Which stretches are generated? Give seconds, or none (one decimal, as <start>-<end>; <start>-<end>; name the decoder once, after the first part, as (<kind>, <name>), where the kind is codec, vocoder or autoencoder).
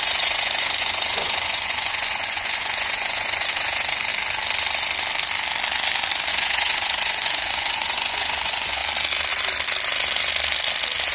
0.0-4.1 (vocoder, Vocos); 6.3-8.8